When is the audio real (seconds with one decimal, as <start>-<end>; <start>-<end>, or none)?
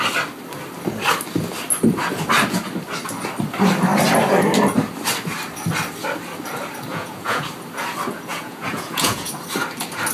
0.0-6.9; 7.4-8.3; 9.3-10.1